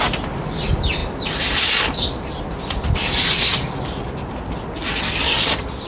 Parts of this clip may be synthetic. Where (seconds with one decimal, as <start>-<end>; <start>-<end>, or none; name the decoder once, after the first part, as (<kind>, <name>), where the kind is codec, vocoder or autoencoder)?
none

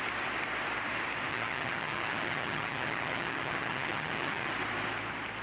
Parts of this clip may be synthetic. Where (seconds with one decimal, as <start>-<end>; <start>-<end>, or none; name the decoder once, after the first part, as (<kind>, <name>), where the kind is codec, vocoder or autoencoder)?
1.3-4.5 (vocoder, HiFi-GAN)

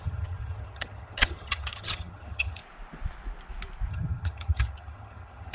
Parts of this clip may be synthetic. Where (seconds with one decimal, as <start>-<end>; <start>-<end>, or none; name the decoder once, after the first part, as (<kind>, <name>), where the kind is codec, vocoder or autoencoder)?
0.0-2.6 (vocoder, HiFi-GAN); 3.9-5.5